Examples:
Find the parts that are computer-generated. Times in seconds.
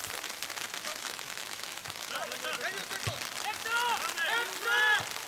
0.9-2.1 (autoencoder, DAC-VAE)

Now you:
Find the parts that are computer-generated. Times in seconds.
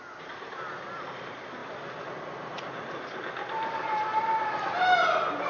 3.6-4.2 (vocoder, BigVGAN v2)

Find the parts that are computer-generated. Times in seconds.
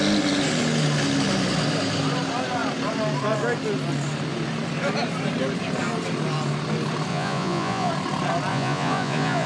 7.1-7.9 (vocoder, Vocos); 8.5-9.5